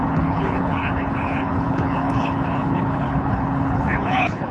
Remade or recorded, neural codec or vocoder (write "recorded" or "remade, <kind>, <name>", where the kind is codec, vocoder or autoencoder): remade, codec, HILCodec